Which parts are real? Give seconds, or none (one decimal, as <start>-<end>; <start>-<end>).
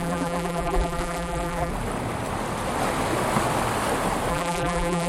1.7-4.3